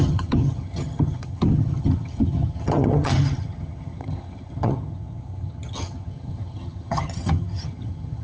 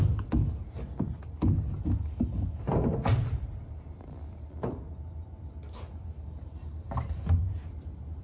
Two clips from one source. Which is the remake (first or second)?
first